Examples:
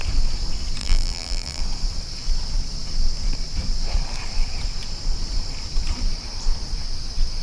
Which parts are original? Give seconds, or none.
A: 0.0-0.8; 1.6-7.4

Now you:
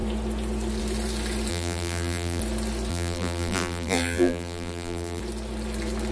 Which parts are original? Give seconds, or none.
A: 0.0-1.5; 2.4-2.9; 5.2-6.1

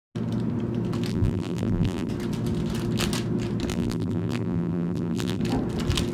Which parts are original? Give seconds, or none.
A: 0.0-1.1; 2.1-3.7; 5.4-6.1

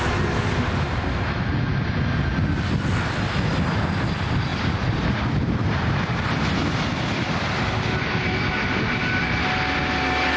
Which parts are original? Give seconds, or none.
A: 0.0-10.4